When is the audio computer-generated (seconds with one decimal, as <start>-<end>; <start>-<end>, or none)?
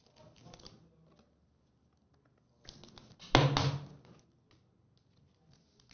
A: none